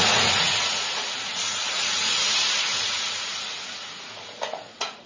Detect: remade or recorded remade